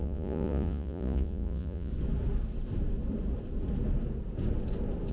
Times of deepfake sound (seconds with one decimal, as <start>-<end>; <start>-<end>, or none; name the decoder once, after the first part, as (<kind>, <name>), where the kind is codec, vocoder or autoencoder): 0.0-1.9 (vocoder, Vocos)